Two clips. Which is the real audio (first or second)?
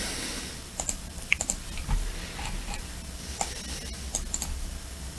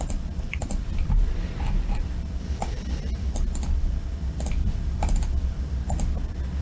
first